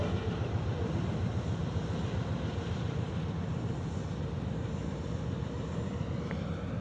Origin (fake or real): real